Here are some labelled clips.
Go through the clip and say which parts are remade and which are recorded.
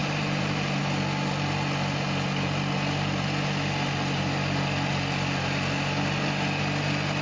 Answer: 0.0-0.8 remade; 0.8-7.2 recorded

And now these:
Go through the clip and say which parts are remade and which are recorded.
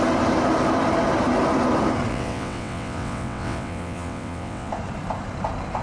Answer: 0.0-2.1 recorded; 2.1-4.7 remade; 4.7-5.8 recorded